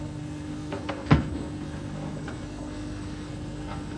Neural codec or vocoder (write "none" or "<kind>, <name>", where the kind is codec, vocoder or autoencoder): codec, SNAC